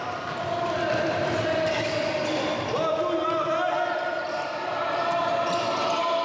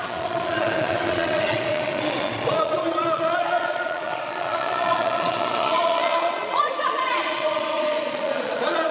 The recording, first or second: first